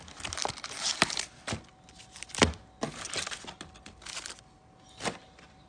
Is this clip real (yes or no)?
yes